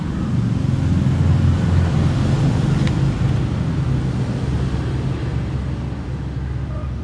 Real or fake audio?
real